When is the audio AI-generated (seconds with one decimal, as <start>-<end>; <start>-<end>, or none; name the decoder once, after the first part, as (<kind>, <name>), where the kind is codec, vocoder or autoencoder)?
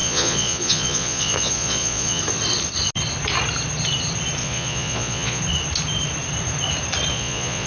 0.0-2.2 (vocoder, Vocos); 4.4-5.4; 7.1-7.7